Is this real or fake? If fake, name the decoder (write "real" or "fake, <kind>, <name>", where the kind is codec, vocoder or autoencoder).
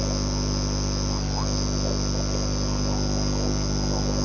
real